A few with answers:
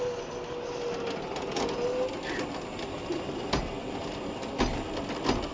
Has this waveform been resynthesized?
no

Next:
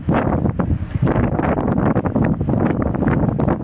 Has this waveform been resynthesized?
no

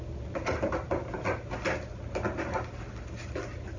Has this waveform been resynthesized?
no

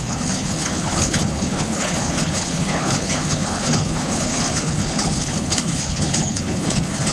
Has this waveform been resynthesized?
yes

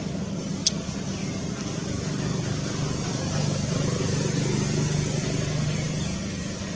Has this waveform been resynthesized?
no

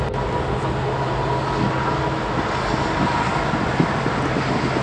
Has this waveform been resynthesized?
no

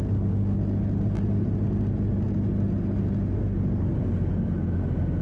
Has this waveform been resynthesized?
no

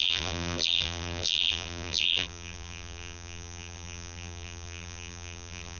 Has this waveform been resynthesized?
yes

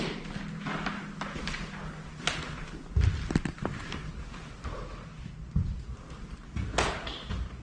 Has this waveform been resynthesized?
no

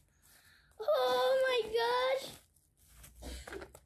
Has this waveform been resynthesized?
no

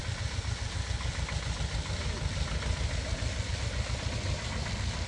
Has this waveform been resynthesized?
no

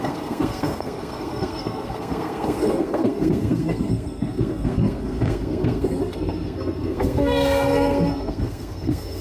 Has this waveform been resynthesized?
yes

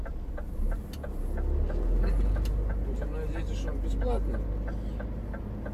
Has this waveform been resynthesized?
no